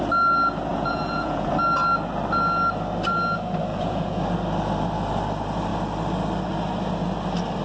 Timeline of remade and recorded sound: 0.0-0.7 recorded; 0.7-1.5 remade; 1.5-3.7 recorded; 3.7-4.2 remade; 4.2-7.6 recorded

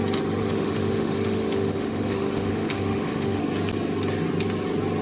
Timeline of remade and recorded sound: 0.0-0.4 recorded; 0.4-3.4 remade; 3.4-5.0 recorded

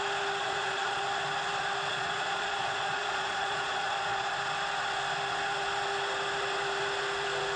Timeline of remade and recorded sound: 0.0-0.4 recorded; 0.4-1.0 remade; 1.0-1.9 recorded; 1.9-4.3 remade; 4.3-7.6 recorded

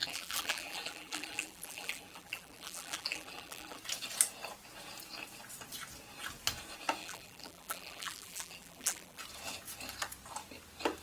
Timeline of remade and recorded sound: 0.0-3.8 remade; 3.8-7.0 recorded; 7.0-9.2 remade; 9.2-11.0 recorded